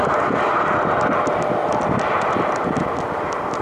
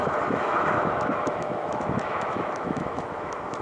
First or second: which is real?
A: first